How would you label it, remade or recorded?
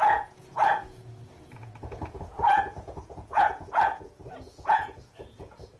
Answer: remade